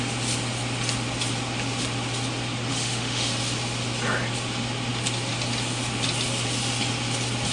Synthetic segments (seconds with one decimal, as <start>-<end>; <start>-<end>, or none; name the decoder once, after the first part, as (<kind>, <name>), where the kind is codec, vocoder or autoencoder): 2.7-3.3 (autoencoder, DAC-VAE)